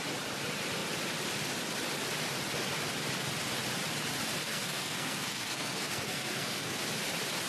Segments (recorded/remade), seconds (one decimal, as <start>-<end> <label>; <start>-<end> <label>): 0.0-4.4 recorded; 4.4-6.8 remade; 6.8-7.5 recorded